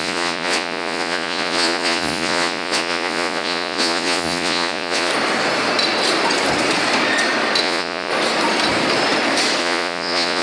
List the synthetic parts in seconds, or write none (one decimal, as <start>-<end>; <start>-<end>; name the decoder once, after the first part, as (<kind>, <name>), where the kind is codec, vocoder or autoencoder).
0.0-5.1 (vocoder, Vocos); 7.6-8.1; 9.6-10.4